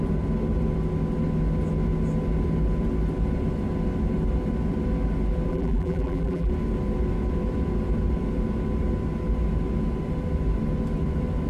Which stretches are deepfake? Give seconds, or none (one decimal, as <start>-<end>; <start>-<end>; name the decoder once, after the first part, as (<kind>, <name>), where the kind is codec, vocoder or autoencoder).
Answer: 5.5-6.5 (vocoder, BigVGAN v2)